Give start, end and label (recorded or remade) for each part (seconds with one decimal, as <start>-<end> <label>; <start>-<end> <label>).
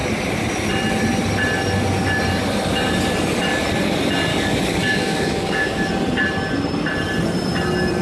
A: 0.0-4.3 recorded; 4.3-5.9 remade; 5.9-8.0 recorded